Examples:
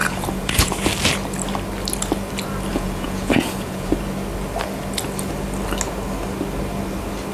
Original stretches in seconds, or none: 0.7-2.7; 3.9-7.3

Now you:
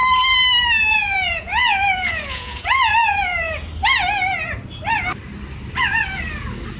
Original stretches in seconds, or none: 0.0-0.9; 3.5-6.8